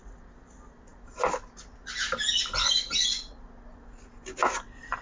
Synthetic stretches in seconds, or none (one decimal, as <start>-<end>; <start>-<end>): none